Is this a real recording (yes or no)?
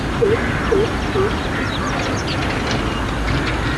yes